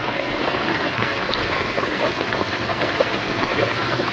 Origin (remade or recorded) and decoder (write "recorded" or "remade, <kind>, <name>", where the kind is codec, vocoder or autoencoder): remade, codec, SNAC